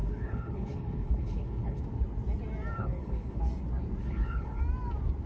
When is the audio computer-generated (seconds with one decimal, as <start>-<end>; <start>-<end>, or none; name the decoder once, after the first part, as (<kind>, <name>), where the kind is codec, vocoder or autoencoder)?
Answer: 0.0-1.8 (codec, HILCodec); 2.8-3.4; 4.0-4.6